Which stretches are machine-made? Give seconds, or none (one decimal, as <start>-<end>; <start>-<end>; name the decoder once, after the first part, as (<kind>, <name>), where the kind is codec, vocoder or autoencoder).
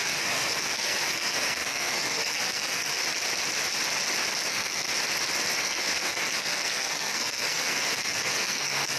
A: 0.0-3.0 (codec, SNAC); 4.5-4.9; 5.6-9.0